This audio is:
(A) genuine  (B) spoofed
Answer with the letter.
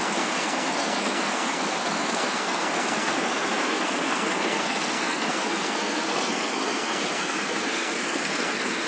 B